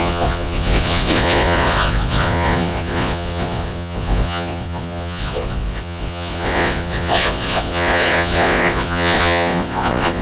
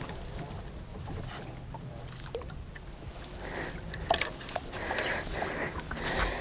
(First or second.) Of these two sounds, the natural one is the second